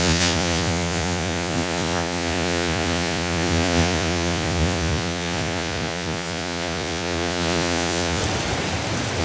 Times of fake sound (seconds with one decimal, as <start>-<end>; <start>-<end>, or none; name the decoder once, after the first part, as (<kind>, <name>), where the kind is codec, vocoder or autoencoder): 0.0-8.2 (vocoder, Vocos)